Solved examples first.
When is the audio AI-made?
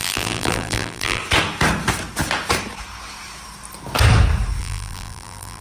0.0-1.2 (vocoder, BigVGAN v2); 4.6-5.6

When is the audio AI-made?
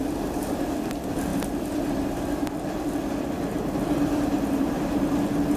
none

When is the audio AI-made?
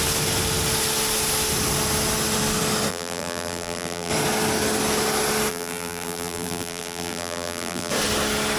2.9-4.1 (vocoder, BigVGAN v2); 5.5-7.9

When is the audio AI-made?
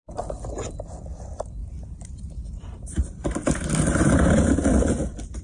1.6-4.5 (vocoder, BigVGAN v2)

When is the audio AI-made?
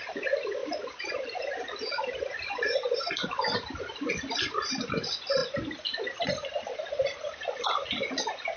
none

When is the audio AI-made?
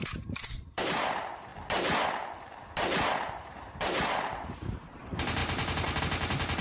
0.0-1.5 (vocoder, BigVGAN v2); 3.3-6.6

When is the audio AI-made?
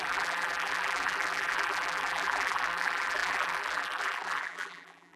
0.0-5.2 (vocoder, BigVGAN v2)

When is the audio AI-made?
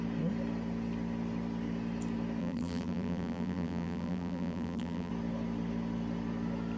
2.4-5.1 (vocoder, BigVGAN v2)